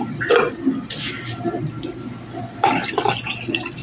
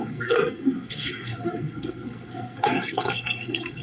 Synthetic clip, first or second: second